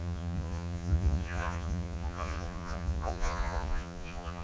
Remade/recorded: remade